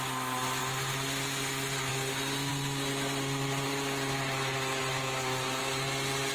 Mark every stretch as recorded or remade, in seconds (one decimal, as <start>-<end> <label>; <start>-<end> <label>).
0.0-6.3 recorded